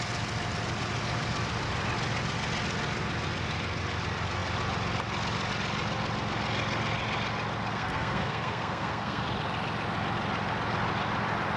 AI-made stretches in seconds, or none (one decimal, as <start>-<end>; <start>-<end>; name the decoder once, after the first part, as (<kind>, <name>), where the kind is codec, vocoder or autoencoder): 7.7-9.2 (codec, SNAC)